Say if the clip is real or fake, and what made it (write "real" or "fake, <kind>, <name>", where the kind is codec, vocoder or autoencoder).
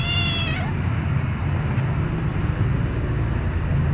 real